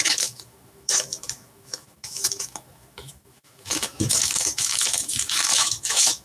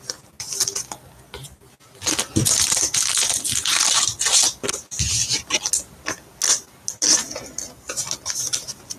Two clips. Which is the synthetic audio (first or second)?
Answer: first